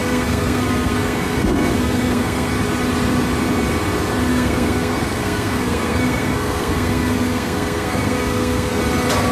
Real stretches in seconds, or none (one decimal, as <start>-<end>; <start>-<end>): 2.5-4.3; 8.8-9.3